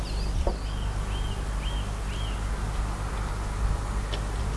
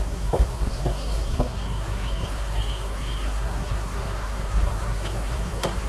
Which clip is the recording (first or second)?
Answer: first